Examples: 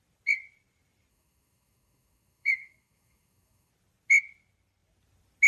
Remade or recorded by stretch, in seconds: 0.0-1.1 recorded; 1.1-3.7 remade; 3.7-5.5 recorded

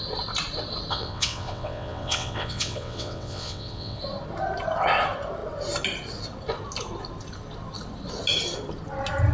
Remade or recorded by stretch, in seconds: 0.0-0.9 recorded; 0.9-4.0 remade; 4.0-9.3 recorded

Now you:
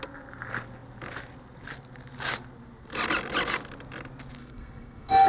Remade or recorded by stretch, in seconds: 0.0-4.4 recorded; 4.4-5.3 remade

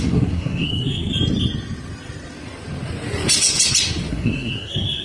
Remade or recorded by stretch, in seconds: 0.0-1.1 remade; 1.1-4.1 recorded; 4.1-5.0 remade

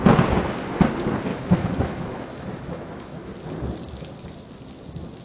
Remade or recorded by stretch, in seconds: 0.0-1.3 recorded; 1.3-3.3 remade; 3.3-5.2 recorded

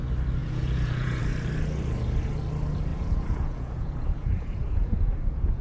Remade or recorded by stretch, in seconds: 0.0-0.4 recorded; 0.4-1.2 remade; 1.2-2.9 recorded; 2.9-5.6 remade